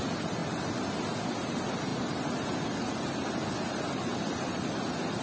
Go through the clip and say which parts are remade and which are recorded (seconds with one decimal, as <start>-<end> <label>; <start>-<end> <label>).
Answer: 0.0-5.2 recorded